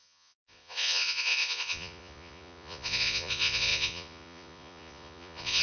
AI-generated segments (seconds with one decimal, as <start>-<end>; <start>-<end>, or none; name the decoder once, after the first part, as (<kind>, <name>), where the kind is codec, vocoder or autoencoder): 0.0-5.6 (vocoder, Vocos)